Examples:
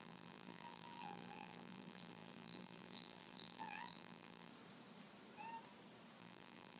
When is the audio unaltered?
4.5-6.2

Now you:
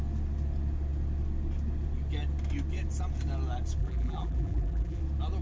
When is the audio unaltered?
0.0-3.8; 5.0-5.4

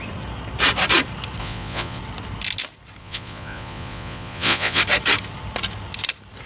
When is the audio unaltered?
0.0-1.4; 2.0-3.0; 4.8-6.5

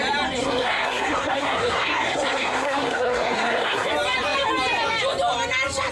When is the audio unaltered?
0.0-0.4; 3.9-5.9

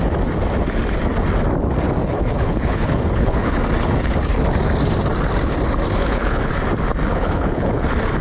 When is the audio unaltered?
0.0-2.0; 3.5-6.0; 6.5-7.1; 7.7-8.2

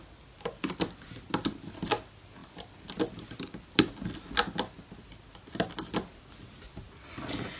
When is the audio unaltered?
0.0-7.6

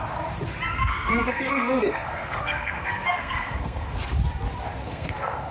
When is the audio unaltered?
0.0-0.7; 4.0-4.8